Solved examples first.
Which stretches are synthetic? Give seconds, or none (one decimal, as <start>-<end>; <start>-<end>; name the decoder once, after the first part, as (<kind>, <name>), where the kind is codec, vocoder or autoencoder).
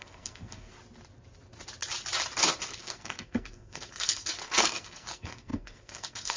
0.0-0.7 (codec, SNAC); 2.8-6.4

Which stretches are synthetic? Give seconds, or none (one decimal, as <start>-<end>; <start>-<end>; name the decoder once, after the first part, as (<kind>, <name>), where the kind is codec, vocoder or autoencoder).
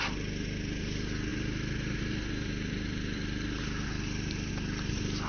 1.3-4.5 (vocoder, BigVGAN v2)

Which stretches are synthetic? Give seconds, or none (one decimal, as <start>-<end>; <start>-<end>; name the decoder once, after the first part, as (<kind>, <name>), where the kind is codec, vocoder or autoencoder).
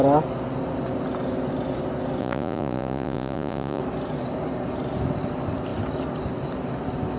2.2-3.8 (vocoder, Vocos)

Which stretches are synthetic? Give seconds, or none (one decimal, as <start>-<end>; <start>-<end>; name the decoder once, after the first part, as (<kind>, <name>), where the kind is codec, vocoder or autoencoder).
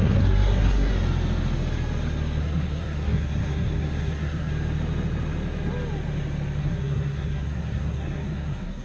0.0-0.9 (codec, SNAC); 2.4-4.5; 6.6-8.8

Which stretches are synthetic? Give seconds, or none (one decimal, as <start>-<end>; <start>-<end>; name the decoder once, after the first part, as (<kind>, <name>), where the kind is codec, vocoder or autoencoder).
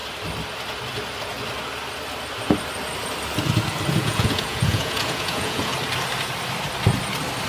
3.9-5.7 (vocoder, Vocos)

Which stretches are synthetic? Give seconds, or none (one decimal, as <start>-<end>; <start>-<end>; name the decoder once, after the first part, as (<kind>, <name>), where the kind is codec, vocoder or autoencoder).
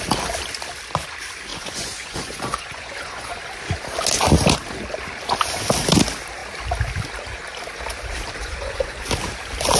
1.5-3.4 (vocoder, Vocos); 8.4-9.1